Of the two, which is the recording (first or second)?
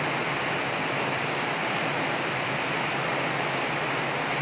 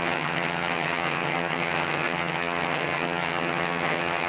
first